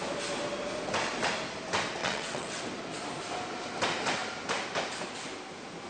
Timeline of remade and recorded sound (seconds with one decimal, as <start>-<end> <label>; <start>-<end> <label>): 0.0-2.0 recorded; 2.0-2.6 remade; 2.6-5.9 recorded